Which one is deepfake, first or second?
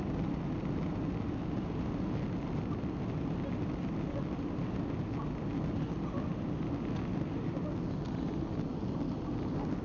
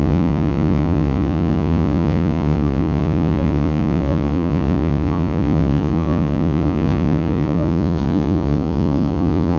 second